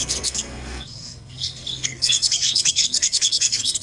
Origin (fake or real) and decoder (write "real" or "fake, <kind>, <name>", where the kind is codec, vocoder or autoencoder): fake, codec, SNAC